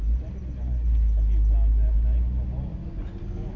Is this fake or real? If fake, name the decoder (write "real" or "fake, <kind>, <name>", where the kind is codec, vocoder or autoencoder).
real